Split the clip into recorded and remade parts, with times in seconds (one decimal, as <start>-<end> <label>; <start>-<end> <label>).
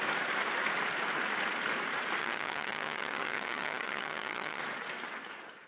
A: 0.0-2.2 recorded; 2.2-4.6 remade; 4.6-5.7 recorded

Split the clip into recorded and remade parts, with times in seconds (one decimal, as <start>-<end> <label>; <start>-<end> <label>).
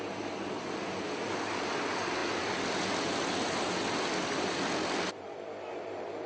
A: 0.0-6.3 recorded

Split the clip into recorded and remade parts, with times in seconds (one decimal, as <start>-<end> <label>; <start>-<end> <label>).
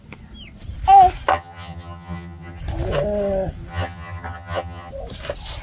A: 0.0-1.3 recorded; 1.3-2.6 remade; 2.6-3.7 recorded; 3.7-4.9 remade; 4.9-5.6 recorded